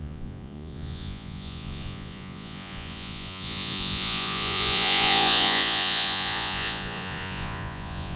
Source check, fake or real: fake